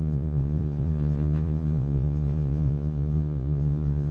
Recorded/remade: remade